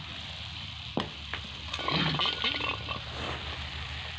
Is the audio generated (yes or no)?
no